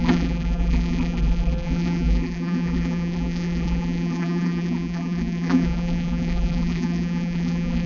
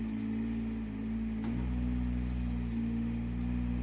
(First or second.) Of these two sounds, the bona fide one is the second